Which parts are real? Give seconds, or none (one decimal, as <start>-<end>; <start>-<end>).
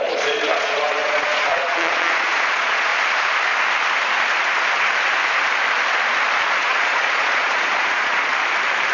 2.9-6.5; 8.3-8.9